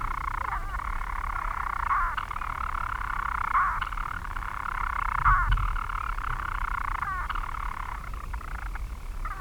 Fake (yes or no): no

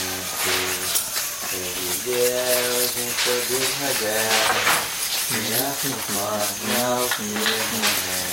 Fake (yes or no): no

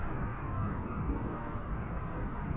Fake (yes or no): yes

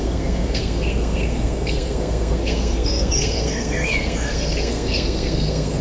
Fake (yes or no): yes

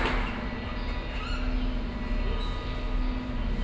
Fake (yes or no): no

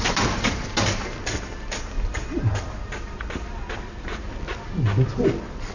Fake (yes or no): no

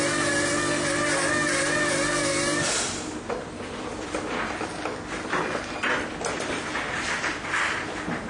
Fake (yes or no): no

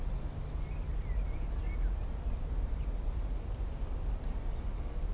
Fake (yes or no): no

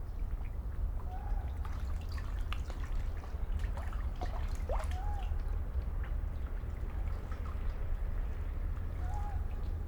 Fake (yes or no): no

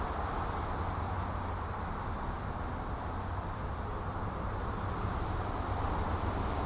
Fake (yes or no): no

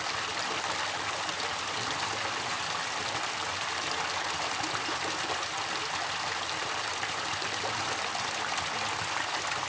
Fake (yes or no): no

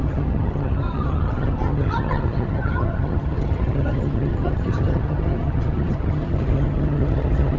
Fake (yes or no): yes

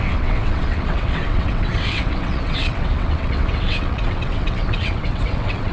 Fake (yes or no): yes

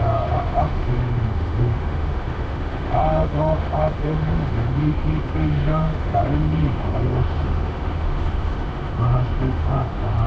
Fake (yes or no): yes